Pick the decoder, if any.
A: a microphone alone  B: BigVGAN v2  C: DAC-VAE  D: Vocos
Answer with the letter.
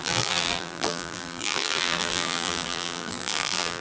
B